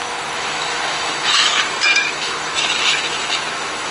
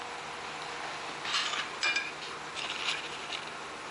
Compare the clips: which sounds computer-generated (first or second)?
first